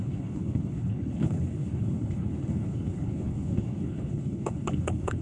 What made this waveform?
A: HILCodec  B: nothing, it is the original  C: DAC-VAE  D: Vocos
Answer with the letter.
A